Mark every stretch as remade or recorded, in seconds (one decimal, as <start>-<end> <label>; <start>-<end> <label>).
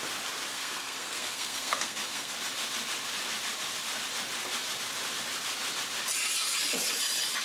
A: 0.0-0.5 recorded; 0.5-2.3 remade; 2.3-7.4 recorded